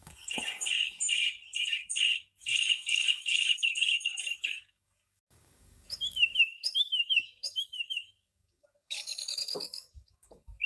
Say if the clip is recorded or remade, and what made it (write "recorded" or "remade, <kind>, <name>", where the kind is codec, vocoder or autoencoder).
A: remade, codec, DAC